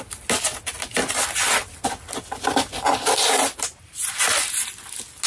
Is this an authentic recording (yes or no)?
yes